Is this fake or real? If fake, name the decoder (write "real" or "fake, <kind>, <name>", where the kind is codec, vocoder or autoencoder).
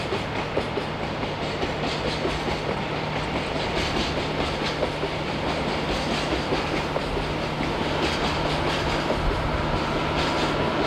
real